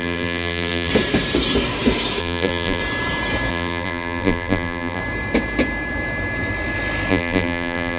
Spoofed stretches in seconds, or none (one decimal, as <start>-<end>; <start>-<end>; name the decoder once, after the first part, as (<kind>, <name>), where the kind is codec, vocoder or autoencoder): 0.0-0.9 (vocoder, BigVGAN v2); 2.2-2.8; 3.5-5.0; 7.1-8.0